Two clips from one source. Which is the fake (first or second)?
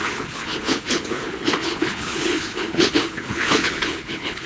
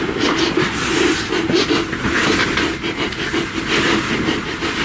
first